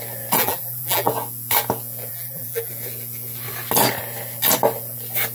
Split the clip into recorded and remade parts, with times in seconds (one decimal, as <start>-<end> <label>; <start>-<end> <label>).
0.0-0.4 recorded; 0.4-1.1 remade; 1.1-2.1 recorded; 2.1-2.7 remade; 2.7-5.3 recorded